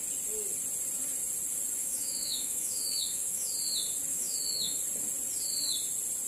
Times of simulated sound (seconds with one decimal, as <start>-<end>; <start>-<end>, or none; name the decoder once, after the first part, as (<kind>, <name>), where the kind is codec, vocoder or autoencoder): 1.8-3.5 (autoencoder, DAC-VAE); 4.1-4.8